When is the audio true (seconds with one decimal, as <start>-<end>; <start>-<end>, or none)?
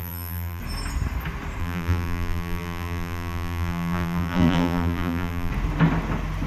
0.6-1.6; 5.5-6.5